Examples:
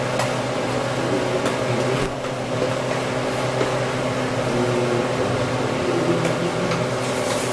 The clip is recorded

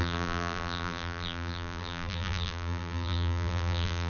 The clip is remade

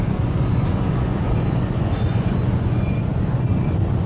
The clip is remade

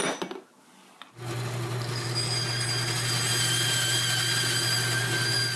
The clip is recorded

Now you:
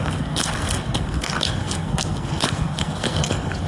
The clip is remade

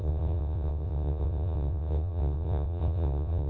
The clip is remade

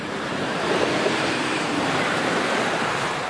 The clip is remade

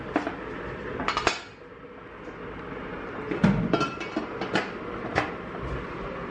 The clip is recorded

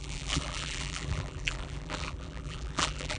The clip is remade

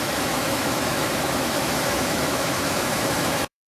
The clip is remade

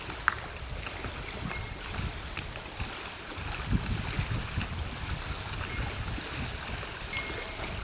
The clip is recorded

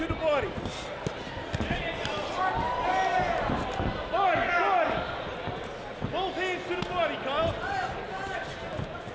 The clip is recorded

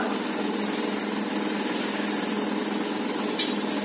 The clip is recorded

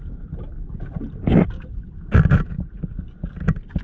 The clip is recorded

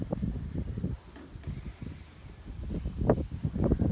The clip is recorded